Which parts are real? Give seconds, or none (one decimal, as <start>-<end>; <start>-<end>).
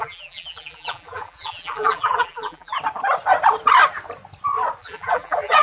2.7-4.8